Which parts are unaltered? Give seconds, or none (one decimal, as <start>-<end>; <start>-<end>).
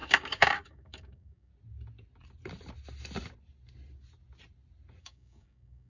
1.5-5.0